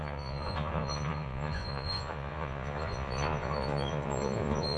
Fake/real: fake